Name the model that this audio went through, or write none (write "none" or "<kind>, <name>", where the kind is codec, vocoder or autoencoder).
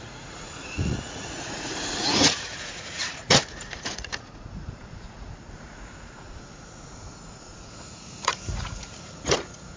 vocoder, Vocos